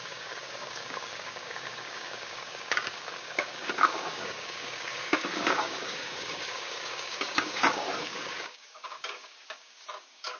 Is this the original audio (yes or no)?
no